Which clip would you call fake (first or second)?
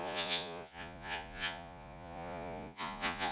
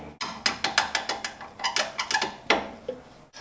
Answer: first